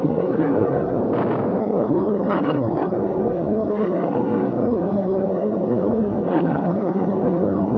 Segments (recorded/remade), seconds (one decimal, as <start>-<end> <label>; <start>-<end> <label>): 0.0-1.0 remade; 1.0-1.6 recorded; 1.6-7.8 remade